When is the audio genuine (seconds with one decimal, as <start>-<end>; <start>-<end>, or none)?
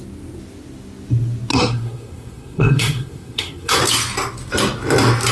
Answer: 0.0-1.5; 3.8-5.3